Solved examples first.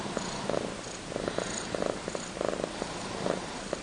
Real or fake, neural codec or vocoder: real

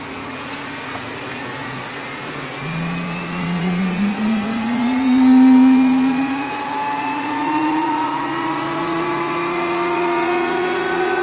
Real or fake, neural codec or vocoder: fake, vocoder, Vocos